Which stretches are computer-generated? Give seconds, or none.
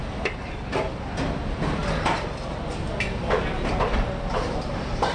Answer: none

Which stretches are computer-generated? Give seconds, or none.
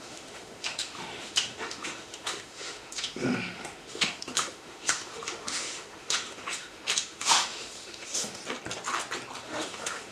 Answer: 0.0-8.4 (autoencoder, DAC-VAE); 9.4-10.1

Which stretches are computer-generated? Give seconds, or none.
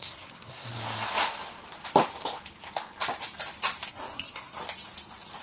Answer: 0.0-0.7 (codec, SNAC); 3.9-4.6